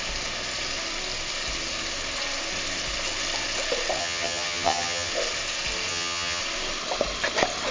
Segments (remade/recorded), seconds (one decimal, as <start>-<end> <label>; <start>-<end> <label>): 0.0-4.0 recorded; 4.0-5.1 remade; 5.1-5.9 recorded; 5.9-6.4 remade; 6.4-7.7 recorded